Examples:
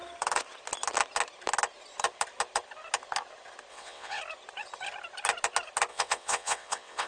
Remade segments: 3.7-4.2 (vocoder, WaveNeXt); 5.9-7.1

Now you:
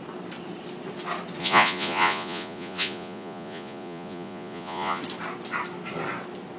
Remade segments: 1.4-5.0 (vocoder, Vocos)

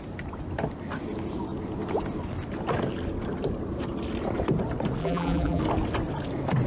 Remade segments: 5.0-5.6 (vocoder, BigVGAN v2)

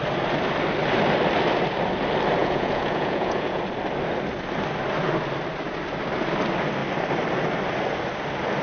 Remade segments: 2.4-3.6 (vocoder, Vocos)

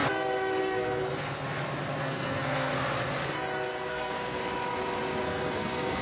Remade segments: 0.6-1.1 (codec, SNAC); 2.0-2.7; 3.9-4.4; 5.2-6.0